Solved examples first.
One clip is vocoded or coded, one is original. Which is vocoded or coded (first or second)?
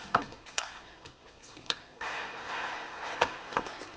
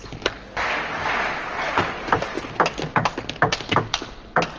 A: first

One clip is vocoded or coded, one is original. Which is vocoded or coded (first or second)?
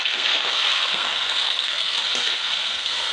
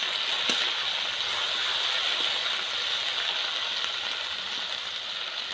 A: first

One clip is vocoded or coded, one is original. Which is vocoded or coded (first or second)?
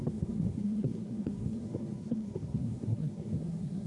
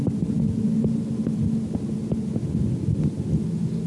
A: first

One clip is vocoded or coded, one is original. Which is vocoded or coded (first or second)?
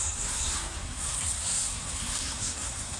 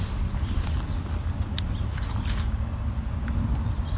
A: first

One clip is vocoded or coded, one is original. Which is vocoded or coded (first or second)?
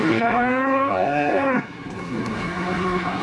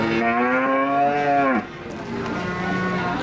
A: first